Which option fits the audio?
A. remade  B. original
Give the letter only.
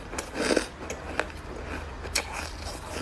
B